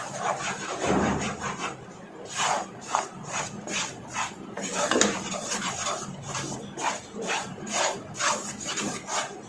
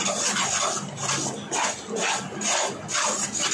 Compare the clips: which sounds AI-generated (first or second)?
first